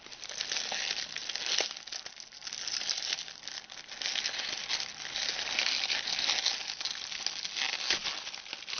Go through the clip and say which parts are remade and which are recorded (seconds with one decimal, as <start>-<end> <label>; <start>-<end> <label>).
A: 0.0-8.8 recorded